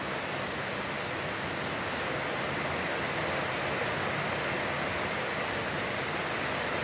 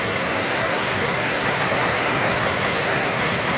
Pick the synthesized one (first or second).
second